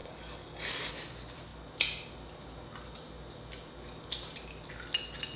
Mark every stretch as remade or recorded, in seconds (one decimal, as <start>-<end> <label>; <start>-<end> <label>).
0.0-0.9 remade; 0.9-5.4 recorded